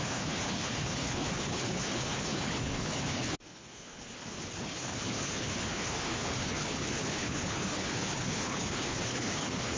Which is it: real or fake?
fake